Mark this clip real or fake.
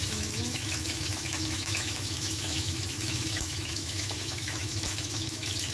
fake